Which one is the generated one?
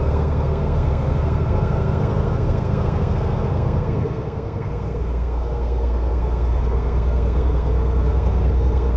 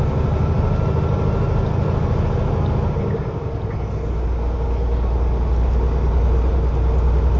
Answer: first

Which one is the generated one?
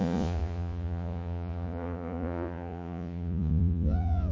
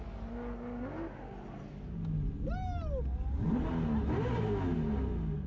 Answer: first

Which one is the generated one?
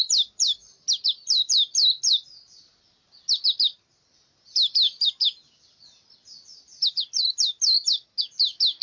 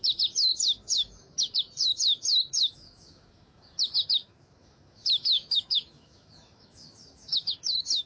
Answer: second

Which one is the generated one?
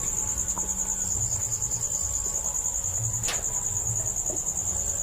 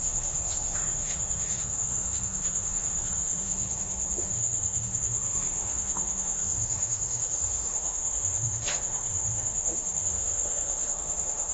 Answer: second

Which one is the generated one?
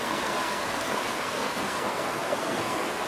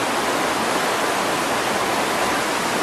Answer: first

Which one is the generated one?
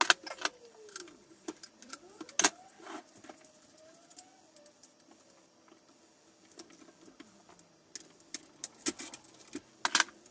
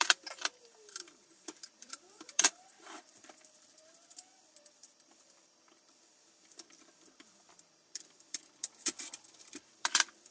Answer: second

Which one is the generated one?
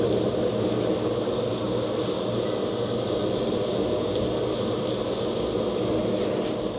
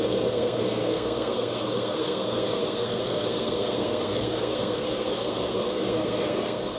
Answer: second